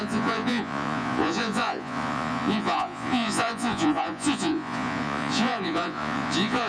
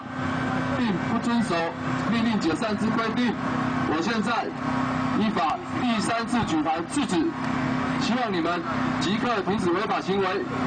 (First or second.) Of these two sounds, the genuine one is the second